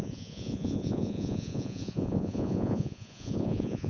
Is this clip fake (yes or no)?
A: yes